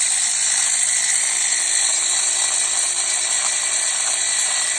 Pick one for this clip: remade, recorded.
recorded